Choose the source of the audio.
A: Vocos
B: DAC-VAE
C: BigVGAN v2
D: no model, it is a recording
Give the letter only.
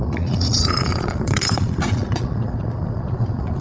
A